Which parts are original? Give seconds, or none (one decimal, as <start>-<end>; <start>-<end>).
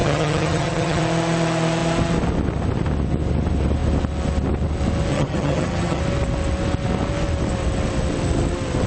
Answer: 1.0-5.1; 6.0-8.9